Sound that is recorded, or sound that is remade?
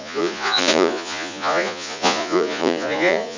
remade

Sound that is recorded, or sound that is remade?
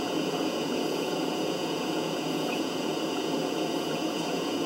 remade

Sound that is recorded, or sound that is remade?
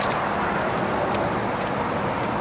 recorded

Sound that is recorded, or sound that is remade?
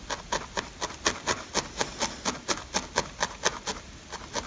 recorded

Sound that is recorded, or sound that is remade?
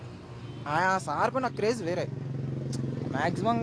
recorded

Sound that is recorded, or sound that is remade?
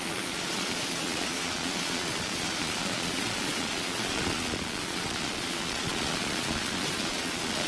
remade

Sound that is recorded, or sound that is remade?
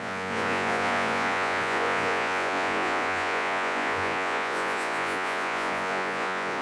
remade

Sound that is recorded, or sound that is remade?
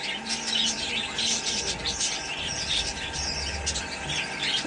recorded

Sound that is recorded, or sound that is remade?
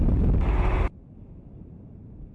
recorded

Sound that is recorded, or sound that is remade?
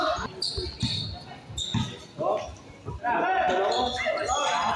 recorded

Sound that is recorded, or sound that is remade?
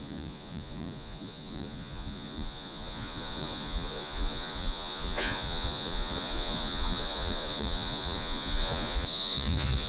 remade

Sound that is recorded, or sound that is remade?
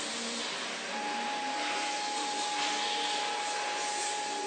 recorded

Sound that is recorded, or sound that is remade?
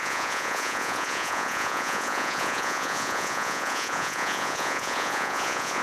remade